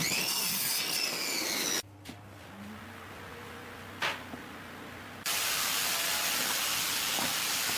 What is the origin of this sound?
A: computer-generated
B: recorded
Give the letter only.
B